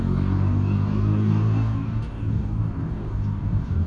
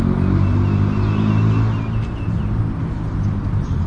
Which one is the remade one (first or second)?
first